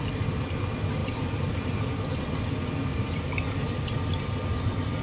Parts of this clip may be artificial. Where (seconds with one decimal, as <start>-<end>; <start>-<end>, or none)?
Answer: 1.0-2.0; 2.9-3.9